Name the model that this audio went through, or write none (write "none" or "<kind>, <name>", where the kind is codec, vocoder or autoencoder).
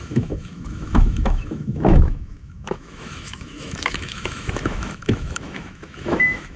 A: autoencoder, DAC-VAE